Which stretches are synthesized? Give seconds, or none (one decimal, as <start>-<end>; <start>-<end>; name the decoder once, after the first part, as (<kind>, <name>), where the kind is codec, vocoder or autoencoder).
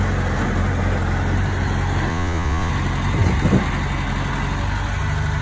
2.1-2.7 (vocoder, Vocos)